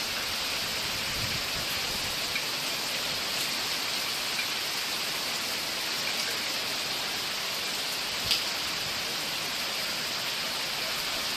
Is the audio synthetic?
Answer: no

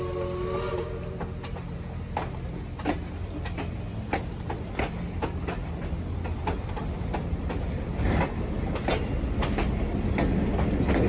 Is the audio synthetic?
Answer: no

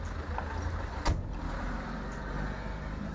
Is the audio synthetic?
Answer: no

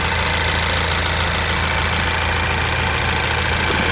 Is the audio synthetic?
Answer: no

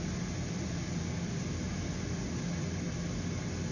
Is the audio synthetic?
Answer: no